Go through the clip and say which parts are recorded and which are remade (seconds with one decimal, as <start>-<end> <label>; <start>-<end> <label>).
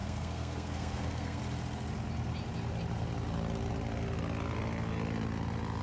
0.0-1.4 remade; 1.4-5.8 recorded